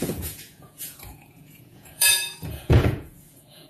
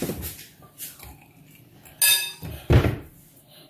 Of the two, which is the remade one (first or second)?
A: first